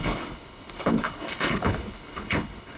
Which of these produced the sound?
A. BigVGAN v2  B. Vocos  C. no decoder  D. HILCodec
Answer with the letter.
D